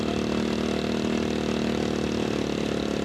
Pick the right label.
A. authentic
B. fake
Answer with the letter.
A